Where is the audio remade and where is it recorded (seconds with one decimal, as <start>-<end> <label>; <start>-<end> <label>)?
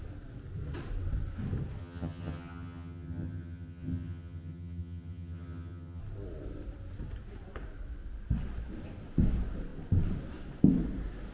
0.0-1.8 recorded; 1.8-6.0 remade; 6.0-11.3 recorded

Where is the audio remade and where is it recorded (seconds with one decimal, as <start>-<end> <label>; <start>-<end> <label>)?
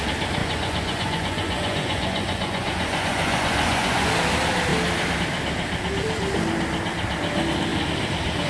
0.0-0.4 recorded; 0.4-4.1 remade; 4.1-8.5 recorded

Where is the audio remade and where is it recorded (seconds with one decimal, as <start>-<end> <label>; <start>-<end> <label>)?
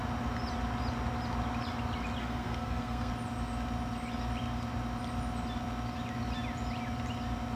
0.0-2.2 recorded; 2.2-3.1 remade; 3.1-7.6 recorded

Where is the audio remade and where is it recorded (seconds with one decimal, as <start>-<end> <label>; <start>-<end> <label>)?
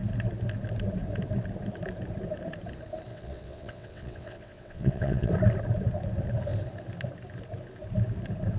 0.0-3.1 recorded; 3.1-5.3 remade; 5.3-8.6 recorded